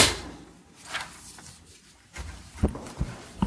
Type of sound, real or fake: real